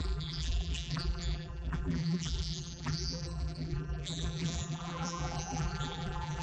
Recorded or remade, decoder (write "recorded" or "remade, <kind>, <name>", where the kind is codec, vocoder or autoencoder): remade, vocoder, BigVGAN v2